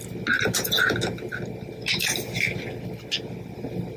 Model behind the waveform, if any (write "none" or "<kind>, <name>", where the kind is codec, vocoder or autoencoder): none